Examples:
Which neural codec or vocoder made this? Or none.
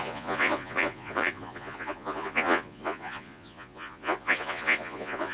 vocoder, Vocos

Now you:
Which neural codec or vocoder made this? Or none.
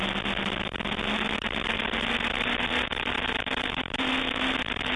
none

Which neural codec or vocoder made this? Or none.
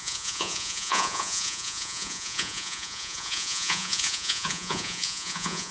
vocoder, Vocos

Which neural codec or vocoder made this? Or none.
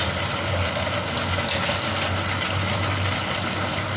none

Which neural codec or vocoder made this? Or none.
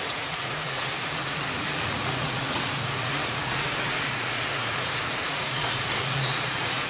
vocoder, Vocos